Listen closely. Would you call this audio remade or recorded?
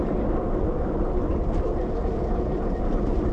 recorded